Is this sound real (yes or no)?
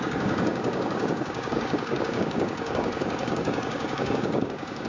no